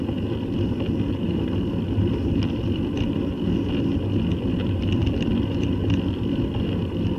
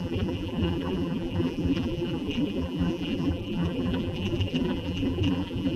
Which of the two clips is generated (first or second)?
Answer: second